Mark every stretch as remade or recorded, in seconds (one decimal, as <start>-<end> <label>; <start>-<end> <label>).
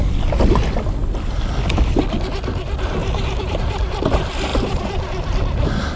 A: 0.0-3.0 recorded; 3.0-3.6 remade; 3.6-6.0 recorded